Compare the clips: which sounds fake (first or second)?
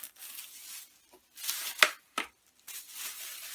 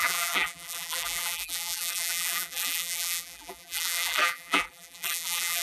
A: second